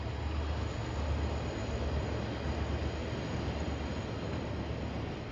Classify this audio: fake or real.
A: real